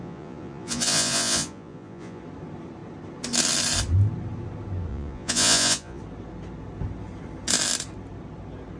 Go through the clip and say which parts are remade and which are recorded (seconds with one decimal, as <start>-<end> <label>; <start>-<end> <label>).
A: 0.0-2.2 remade; 2.2-4.9 recorded; 4.9-6.0 remade; 6.0-8.8 recorded